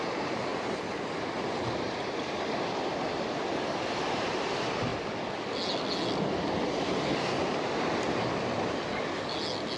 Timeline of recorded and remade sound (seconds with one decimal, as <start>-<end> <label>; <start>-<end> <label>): 0.0-4.9 remade; 4.9-9.8 recorded